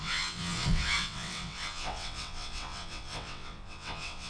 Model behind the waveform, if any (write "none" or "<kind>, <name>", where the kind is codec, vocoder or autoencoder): vocoder, WaveNeXt